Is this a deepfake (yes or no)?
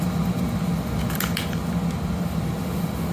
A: no